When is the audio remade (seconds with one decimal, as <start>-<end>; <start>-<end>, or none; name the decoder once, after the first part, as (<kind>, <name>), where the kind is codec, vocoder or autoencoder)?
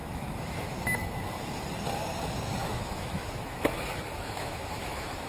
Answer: 0.0-0.8 (autoencoder, DAC-VAE); 2.6-5.3